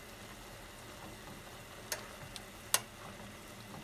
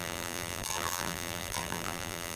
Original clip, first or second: first